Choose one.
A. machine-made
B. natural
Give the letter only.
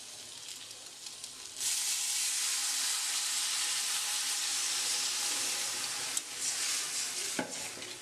B